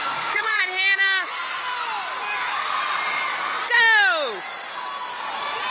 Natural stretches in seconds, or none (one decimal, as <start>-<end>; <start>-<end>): 0.6-5.7